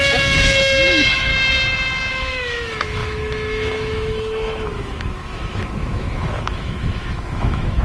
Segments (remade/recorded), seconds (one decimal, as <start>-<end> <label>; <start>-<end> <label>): 0.0-1.3 remade; 1.3-2.1 recorded; 2.1-7.8 remade